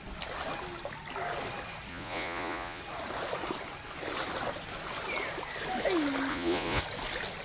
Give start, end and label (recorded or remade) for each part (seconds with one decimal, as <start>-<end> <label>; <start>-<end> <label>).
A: 0.0-1.9 recorded; 1.9-2.8 remade; 2.8-6.3 recorded; 6.3-6.8 remade; 6.8-7.4 recorded